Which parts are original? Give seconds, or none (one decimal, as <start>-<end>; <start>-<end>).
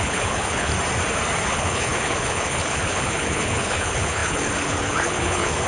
0.7-1.5